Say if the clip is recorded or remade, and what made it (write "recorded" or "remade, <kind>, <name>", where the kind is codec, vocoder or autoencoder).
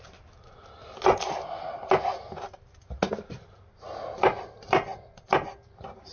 recorded